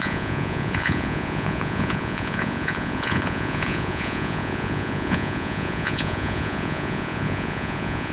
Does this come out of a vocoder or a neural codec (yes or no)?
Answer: yes